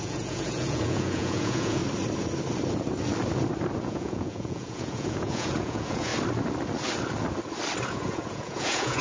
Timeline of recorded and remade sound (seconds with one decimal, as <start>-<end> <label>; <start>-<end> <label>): 0.0-1.8 remade; 1.8-3.8 recorded; 3.8-6.1 remade; 6.1-7.9 recorded; 7.9-9.0 remade